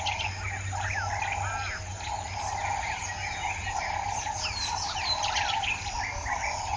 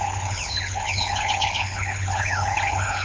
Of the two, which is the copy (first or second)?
second